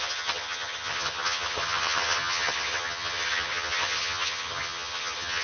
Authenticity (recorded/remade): remade